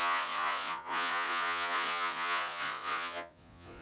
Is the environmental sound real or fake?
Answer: fake